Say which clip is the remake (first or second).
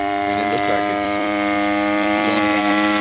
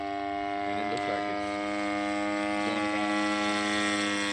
first